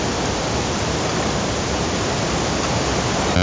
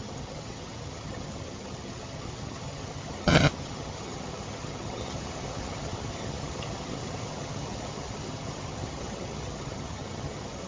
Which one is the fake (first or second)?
second